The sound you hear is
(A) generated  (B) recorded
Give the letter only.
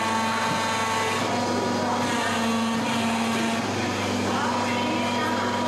B